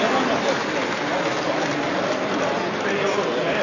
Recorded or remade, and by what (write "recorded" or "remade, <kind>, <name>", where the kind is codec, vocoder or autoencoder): recorded